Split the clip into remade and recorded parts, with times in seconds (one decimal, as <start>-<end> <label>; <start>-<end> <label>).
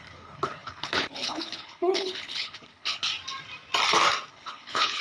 0.0-3.1 remade; 3.1-4.3 recorded; 4.3-5.0 remade